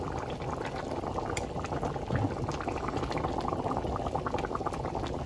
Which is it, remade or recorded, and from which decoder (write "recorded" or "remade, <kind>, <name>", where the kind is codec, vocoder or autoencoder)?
recorded